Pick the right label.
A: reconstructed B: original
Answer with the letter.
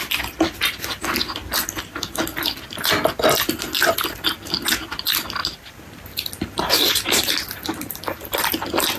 B